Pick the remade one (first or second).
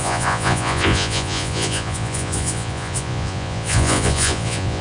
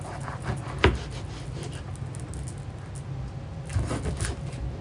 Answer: first